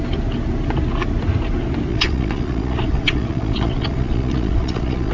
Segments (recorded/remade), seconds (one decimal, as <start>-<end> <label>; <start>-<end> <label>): 0.0-1.9 recorded; 1.9-5.1 remade